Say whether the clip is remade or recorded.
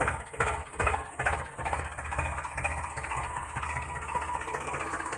remade